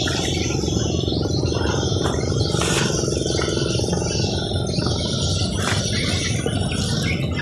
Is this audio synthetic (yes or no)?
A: no